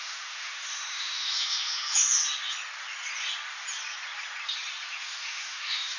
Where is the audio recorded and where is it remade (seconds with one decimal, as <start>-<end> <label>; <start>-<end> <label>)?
0.0-2.2 remade; 2.2-5.0 recorded; 5.0-6.0 remade